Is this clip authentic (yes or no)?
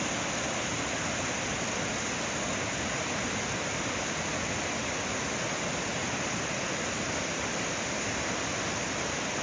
yes